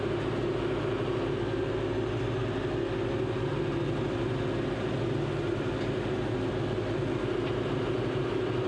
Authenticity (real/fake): real